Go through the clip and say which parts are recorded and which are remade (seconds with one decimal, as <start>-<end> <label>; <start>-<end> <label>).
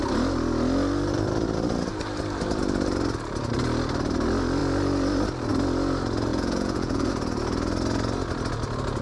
0.0-6.3 recorded; 6.3-7.1 remade; 7.1-9.0 recorded